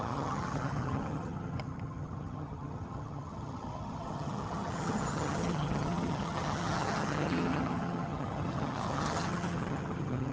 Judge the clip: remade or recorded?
remade